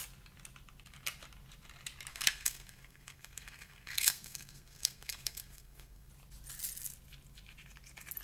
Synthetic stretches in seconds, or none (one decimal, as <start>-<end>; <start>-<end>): 2.1-6.1